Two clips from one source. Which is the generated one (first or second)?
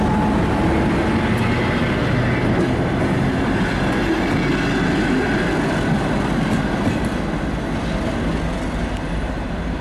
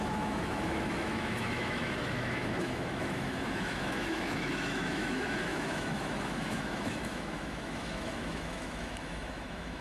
second